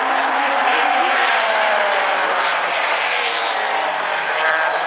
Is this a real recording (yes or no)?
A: no